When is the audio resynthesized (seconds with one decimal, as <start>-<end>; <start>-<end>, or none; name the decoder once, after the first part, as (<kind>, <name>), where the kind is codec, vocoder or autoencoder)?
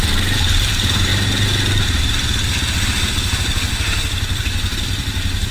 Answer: 0.0-1.1 (vocoder, BigVGAN v2); 4.4-5.5